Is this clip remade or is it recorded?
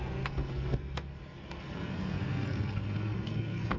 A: remade